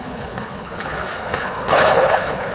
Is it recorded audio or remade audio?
remade